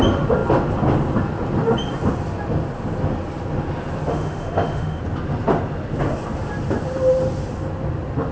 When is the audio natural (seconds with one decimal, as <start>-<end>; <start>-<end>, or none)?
0.0-4.1; 5.0-8.3